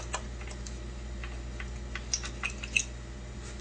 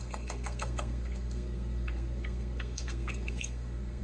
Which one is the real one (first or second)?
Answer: first